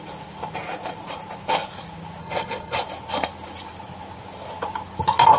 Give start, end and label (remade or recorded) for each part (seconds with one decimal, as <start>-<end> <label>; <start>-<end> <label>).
0.0-2.2 recorded; 2.2-2.8 remade; 2.8-5.4 recorded